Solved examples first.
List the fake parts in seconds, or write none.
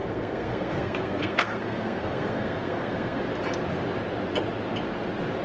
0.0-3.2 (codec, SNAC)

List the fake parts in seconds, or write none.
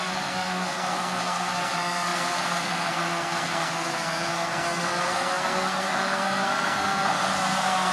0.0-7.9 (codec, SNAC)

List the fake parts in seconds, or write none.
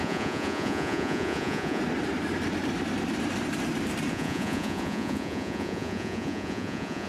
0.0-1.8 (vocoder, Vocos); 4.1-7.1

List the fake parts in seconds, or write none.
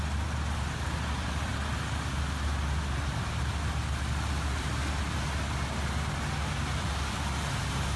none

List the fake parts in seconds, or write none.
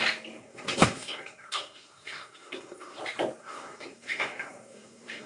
0.4-3.0 (codec, SNAC); 3.4-5.3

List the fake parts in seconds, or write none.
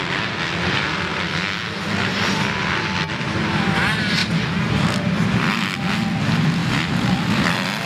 none